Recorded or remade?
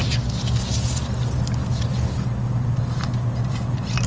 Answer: recorded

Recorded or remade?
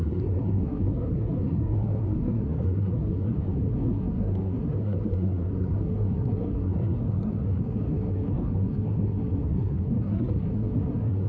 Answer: remade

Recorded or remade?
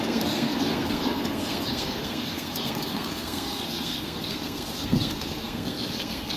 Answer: remade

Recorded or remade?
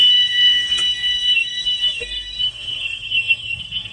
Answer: remade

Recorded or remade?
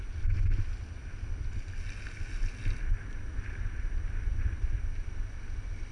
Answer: recorded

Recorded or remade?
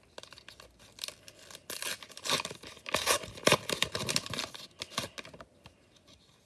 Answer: recorded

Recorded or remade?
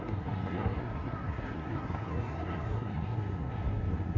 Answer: remade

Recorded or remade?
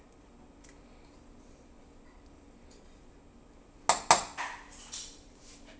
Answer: recorded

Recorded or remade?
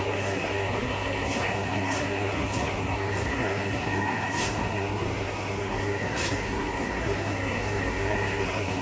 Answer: remade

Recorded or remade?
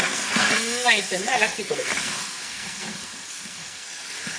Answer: remade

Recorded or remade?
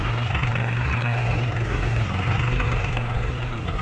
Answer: remade